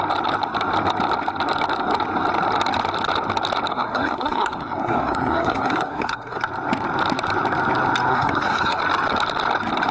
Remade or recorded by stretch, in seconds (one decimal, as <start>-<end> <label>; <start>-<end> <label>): 0.0-3.7 recorded; 3.7-6.4 remade; 6.4-8.1 recorded; 8.1-8.8 remade; 8.8-9.9 recorded